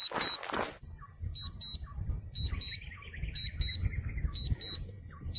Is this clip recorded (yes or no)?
yes